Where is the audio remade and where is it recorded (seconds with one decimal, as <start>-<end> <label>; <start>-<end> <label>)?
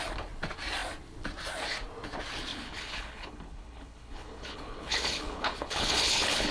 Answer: 0.0-2.5 recorded; 2.5-6.5 remade